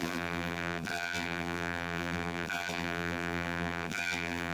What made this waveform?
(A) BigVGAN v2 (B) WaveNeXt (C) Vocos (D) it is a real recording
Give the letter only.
A